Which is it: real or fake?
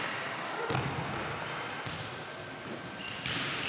real